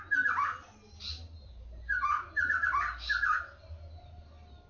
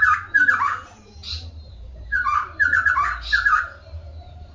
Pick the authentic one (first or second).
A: first